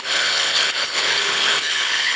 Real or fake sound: fake